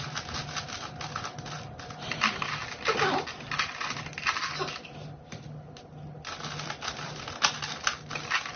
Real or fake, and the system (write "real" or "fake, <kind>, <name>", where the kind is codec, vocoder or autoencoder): real